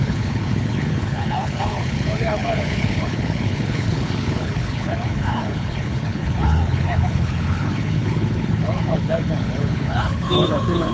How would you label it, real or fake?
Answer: fake